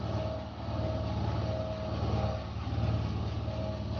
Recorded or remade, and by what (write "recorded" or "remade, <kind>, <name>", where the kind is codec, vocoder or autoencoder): recorded